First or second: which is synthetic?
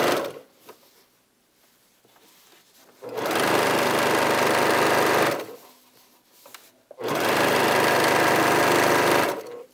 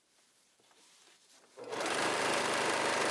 second